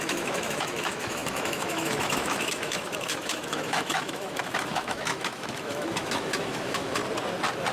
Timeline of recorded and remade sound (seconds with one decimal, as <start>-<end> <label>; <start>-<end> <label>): 0.0-7.0 remade; 7.0-7.7 recorded